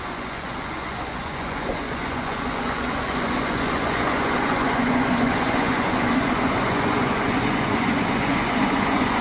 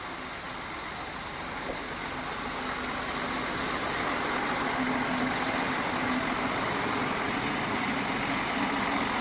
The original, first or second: second